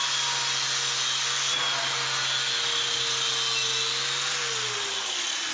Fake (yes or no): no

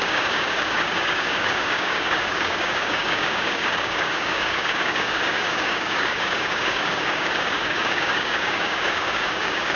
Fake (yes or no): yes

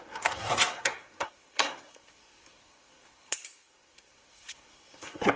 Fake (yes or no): yes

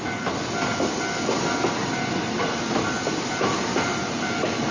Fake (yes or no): no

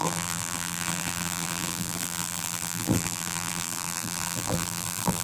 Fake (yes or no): yes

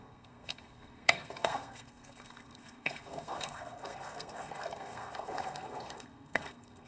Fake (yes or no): yes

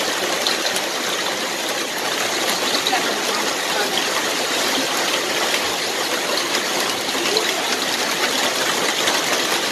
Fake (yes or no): no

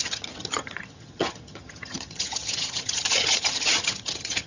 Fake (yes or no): yes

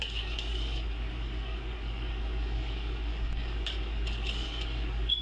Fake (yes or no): yes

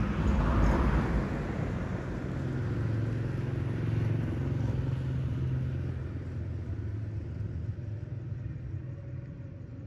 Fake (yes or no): no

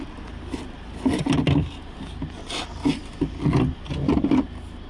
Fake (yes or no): no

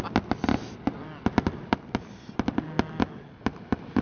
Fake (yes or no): no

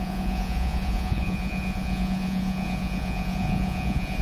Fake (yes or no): yes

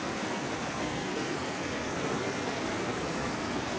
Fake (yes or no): yes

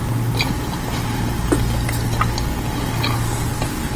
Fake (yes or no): no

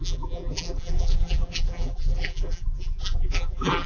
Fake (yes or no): yes